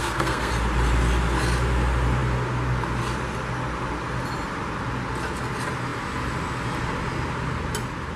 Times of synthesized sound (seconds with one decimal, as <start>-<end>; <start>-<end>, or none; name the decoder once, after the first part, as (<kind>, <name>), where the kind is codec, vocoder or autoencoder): 0.0-0.5 (codec, SNAC)